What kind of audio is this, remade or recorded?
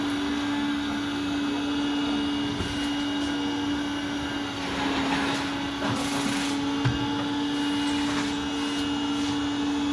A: recorded